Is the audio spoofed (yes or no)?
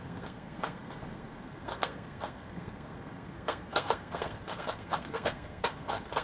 yes